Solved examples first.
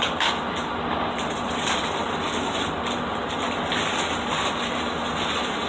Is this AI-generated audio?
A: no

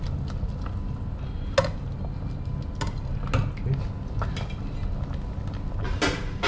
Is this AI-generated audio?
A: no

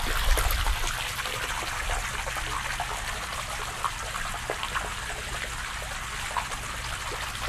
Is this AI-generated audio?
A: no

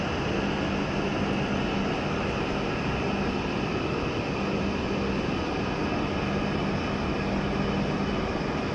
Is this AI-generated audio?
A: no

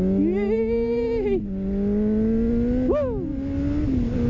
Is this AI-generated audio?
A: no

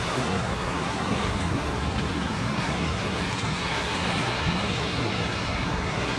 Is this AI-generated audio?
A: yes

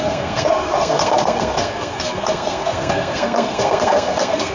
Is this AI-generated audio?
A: yes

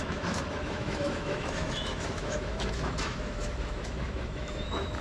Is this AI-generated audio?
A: yes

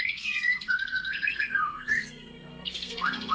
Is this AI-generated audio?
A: yes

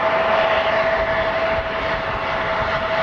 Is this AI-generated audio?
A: no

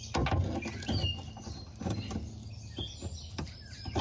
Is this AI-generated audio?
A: no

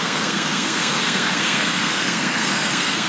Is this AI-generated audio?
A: yes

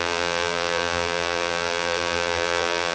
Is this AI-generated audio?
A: yes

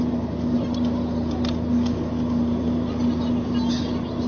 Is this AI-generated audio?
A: no